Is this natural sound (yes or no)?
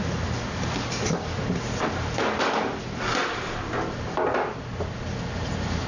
yes